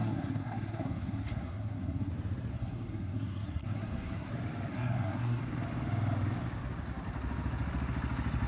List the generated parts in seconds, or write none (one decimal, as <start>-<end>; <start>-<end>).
0.0-2.1; 2.5-4.3; 4.7-5.4